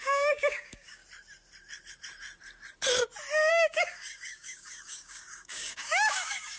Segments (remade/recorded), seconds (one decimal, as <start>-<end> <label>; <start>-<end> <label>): 0.0-1.0 remade; 1.0-3.5 recorded; 3.5-6.6 remade